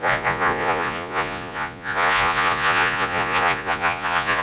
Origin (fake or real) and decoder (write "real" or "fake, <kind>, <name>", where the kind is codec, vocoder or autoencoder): fake, vocoder, Vocos